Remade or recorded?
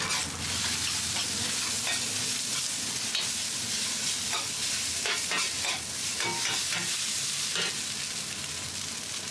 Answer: recorded